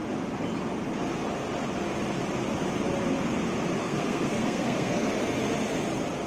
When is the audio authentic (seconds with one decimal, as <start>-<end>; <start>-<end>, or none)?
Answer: 0.0-3.8; 5.1-6.3